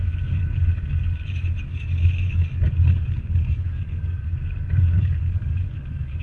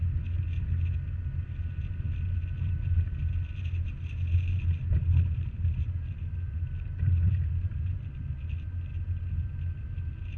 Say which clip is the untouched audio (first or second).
second